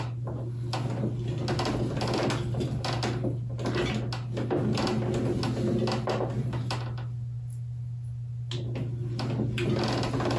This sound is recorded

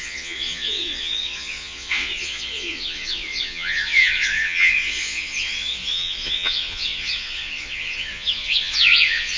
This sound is remade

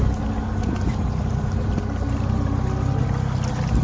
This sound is recorded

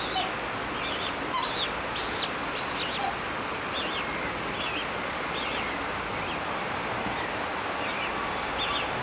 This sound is recorded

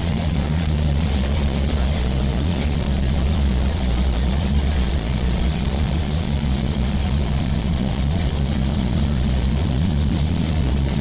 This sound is remade